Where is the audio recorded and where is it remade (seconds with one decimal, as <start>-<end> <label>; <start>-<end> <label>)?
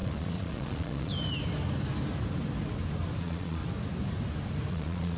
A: 0.0-1.1 remade; 1.1-3.2 recorded; 3.2-3.6 remade; 3.6-4.7 recorded; 4.7-5.2 remade